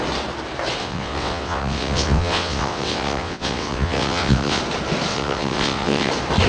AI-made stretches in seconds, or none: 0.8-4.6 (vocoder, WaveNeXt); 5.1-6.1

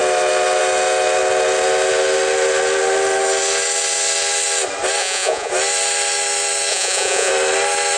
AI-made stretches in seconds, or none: 5.0-5.5 (vocoder, Vocos); 6.7-7.3

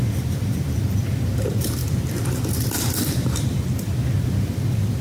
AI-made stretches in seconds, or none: 0.0-5.0 (vocoder, BigVGAN v2)

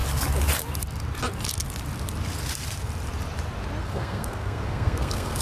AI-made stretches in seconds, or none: 3.8-5.4 (codec, SNAC)